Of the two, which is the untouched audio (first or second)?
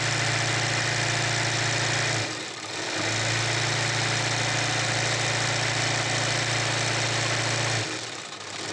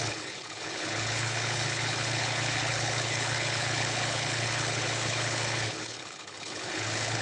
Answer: first